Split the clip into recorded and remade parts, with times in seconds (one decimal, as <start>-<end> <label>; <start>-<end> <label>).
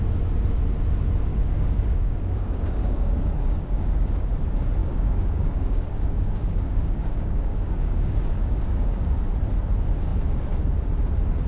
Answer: 0.0-1.3 recorded; 1.3-4.3 remade; 4.3-4.8 recorded; 4.8-9.3 remade; 9.3-11.5 recorded